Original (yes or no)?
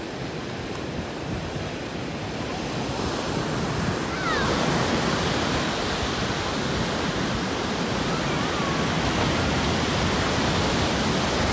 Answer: yes